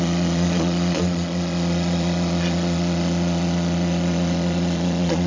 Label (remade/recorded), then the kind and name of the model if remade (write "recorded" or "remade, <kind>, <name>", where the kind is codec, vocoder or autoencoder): remade, vocoder, Vocos